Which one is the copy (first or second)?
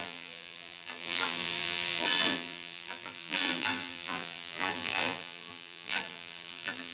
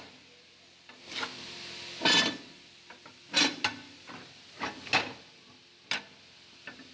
first